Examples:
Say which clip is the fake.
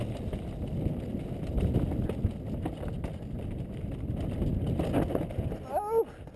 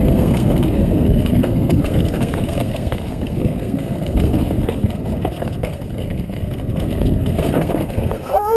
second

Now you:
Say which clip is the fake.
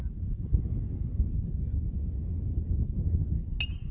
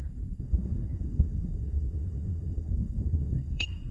second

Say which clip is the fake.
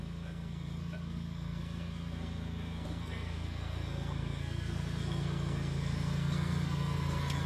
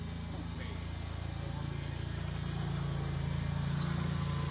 first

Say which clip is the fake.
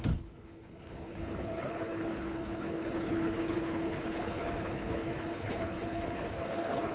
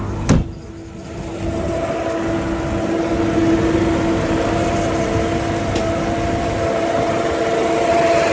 first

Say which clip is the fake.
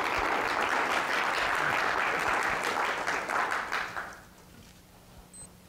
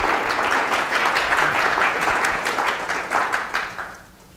second